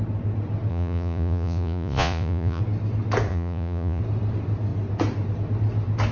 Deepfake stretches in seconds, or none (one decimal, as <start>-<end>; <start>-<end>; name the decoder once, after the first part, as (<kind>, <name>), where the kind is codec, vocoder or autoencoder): 0.7-2.6 (vocoder, Vocos); 3.3-4.0